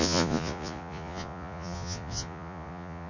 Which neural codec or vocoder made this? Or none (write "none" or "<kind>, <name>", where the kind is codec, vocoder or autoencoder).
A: vocoder, Vocos